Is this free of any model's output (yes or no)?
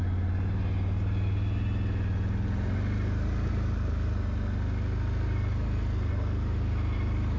yes